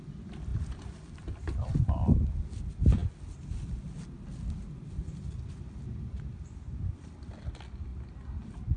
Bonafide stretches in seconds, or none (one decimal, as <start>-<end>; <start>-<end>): 0.0-8.8

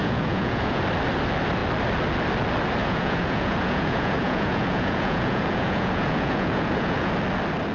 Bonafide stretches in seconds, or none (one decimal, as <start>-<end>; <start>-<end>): 0.8-2.8; 7.1-7.7

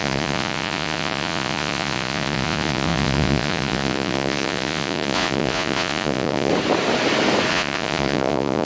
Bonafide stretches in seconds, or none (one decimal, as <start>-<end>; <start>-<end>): 6.5-7.5

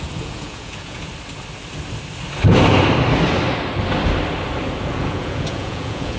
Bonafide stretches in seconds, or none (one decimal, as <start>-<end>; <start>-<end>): 1.1-4.8

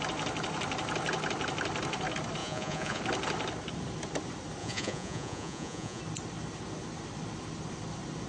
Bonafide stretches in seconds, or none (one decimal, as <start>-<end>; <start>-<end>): 0.0-2.4; 3.0-4.6; 6.0-8.3

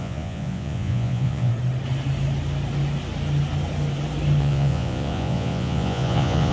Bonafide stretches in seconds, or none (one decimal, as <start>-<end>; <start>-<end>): 1.5-4.4